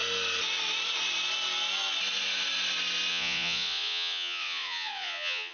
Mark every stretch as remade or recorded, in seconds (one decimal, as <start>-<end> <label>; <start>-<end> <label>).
0.0-3.1 recorded; 3.1-5.5 remade